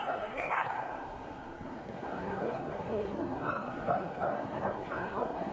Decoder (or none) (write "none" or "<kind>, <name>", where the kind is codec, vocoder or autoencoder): codec, SNAC